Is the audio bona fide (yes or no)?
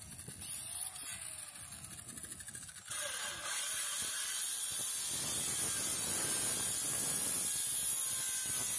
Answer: yes